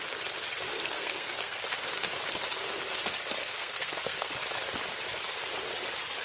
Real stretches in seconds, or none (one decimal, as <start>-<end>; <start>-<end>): 0.0-0.7; 1.6-3.4; 4.3-6.2